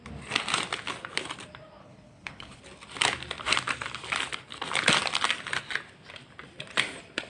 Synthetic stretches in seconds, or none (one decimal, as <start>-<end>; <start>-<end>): 1.8-2.6